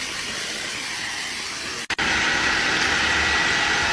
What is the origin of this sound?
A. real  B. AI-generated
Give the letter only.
A